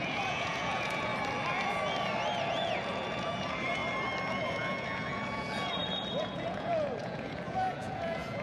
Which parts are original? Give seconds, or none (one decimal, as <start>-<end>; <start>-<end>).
1.1-2.5; 3.8-4.3